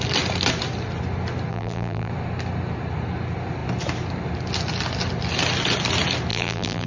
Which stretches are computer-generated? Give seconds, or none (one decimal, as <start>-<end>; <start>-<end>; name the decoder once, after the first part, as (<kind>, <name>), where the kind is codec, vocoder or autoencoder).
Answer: 1.5-2.1 (vocoder, BigVGAN v2); 6.3-6.9